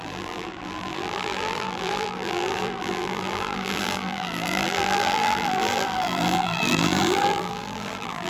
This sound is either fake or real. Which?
fake